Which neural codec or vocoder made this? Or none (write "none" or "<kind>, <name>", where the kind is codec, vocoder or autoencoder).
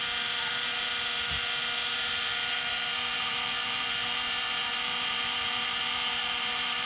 vocoder, BigVGAN v2